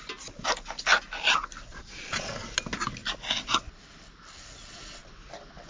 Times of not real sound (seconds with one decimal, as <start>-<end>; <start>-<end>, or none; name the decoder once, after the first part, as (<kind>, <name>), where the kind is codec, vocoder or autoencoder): 1.7-2.3 (vocoder, Vocos)